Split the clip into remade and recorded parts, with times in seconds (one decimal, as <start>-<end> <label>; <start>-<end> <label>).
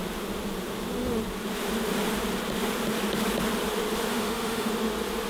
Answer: 0.0-4.1 recorded; 4.1-4.7 remade; 4.7-5.3 recorded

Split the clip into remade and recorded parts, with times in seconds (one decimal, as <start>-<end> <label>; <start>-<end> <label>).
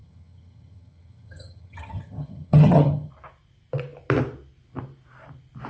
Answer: 0.0-3.1 remade; 3.1-5.7 recorded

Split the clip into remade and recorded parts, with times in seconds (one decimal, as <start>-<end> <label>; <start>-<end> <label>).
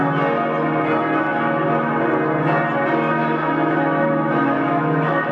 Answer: 0.0-3.2 recorded; 3.2-5.3 remade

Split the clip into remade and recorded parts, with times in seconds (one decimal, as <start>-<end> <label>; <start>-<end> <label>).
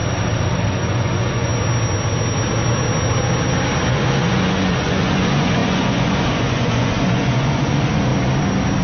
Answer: 0.0-0.7 recorded; 0.7-1.5 remade; 1.5-3.9 recorded; 3.9-8.1 remade; 8.1-8.8 recorded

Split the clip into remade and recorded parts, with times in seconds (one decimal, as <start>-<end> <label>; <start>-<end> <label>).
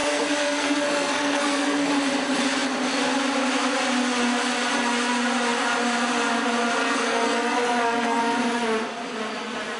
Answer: 0.0-1.9 remade; 1.9-6.8 recorded; 6.8-8.2 remade; 8.2-9.8 recorded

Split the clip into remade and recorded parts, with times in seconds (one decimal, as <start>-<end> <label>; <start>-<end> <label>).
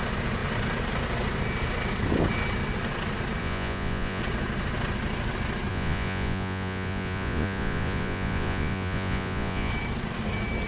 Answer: 0.0-3.4 recorded; 3.4-4.2 remade; 4.2-5.7 recorded; 5.7-9.7 remade; 9.7-10.7 recorded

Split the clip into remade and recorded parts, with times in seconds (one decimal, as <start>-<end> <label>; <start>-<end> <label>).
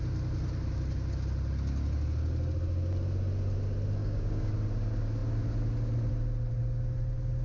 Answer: 0.0-4.0 recorded; 4.0-4.5 remade; 4.5-7.4 recorded